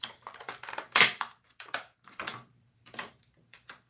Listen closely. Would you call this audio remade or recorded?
remade